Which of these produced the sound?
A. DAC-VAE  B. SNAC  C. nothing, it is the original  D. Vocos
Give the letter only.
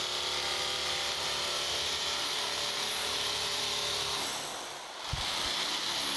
C